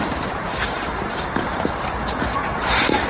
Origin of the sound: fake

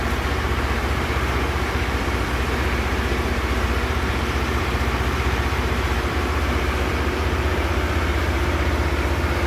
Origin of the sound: fake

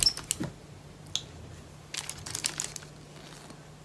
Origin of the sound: real